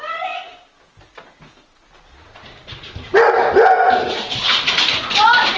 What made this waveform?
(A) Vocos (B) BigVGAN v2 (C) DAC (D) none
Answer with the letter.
D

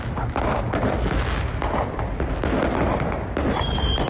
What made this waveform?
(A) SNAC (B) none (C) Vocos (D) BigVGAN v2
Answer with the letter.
B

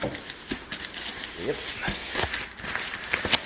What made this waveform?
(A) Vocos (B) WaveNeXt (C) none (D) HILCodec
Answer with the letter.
C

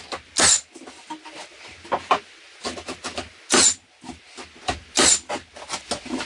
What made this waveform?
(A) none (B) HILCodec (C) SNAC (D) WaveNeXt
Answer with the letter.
A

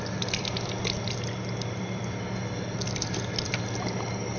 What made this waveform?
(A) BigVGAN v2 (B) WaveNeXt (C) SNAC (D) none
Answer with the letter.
D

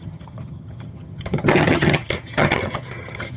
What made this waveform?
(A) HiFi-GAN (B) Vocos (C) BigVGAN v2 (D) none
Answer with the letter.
A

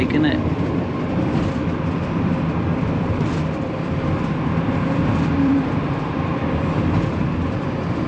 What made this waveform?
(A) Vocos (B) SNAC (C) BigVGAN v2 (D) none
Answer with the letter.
C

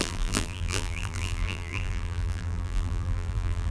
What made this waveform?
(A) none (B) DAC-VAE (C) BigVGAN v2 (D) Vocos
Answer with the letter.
C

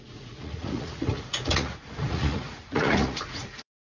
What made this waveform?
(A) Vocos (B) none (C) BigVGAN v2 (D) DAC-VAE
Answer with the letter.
A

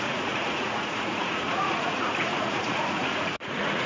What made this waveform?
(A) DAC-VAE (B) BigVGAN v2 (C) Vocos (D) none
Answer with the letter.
C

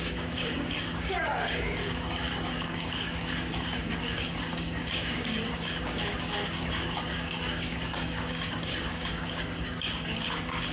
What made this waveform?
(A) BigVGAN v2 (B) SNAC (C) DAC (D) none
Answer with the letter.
C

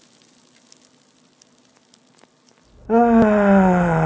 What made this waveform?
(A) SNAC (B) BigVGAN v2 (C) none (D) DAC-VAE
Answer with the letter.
C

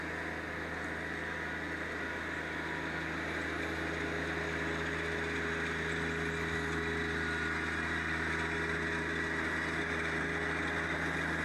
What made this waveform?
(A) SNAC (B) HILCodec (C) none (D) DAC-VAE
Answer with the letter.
C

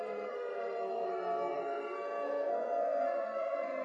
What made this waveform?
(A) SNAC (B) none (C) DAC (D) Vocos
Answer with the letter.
A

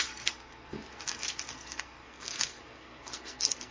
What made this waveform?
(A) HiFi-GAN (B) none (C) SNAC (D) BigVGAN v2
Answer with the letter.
C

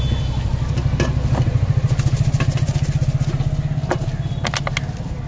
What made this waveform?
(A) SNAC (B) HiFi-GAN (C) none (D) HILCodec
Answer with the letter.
C